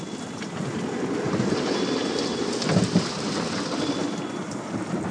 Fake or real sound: real